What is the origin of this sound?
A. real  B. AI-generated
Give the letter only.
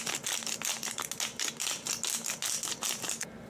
A